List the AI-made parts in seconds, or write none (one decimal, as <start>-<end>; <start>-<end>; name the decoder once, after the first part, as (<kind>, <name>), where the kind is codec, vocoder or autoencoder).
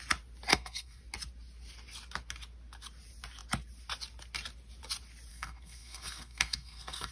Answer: 0.5-1.0 (codec, SNAC); 5.3-7.1